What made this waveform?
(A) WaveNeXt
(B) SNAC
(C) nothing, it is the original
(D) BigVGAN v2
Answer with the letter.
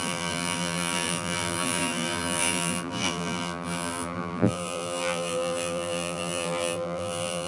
D